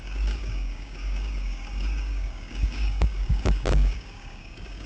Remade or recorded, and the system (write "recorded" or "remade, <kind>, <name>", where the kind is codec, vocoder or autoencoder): remade, codec, DAC